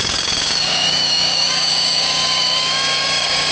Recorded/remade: remade